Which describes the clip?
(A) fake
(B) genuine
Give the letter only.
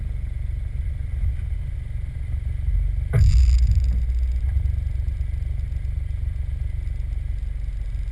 B